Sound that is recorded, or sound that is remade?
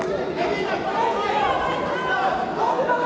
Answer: recorded